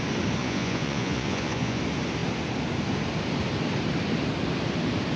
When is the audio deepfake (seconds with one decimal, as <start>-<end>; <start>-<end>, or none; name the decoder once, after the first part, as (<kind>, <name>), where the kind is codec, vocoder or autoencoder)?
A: 0.4-1.8 (vocoder, Vocos)